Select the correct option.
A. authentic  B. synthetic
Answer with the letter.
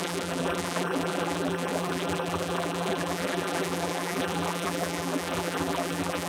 B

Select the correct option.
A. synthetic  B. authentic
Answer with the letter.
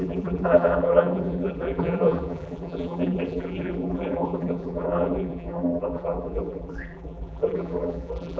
A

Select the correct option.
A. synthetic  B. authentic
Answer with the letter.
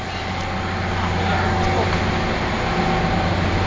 B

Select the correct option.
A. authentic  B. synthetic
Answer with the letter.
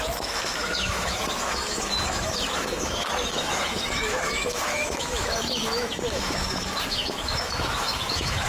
B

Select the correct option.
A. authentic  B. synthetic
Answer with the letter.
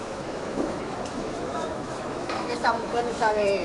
B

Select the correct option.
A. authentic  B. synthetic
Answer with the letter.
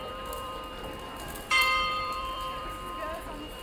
B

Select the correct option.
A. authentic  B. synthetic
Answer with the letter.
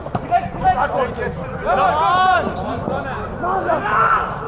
A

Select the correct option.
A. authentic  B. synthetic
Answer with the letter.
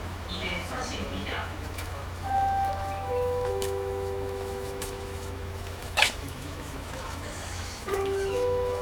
B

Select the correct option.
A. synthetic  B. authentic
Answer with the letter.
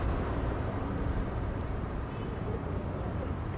A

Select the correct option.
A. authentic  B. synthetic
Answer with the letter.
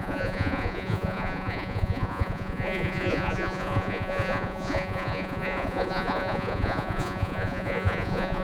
B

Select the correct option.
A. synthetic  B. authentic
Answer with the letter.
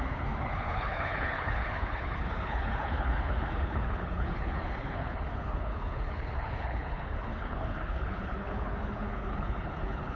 A